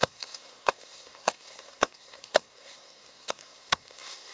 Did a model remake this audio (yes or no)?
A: yes